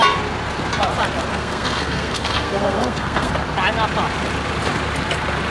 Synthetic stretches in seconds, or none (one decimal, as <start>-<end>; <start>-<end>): 1.3-3.3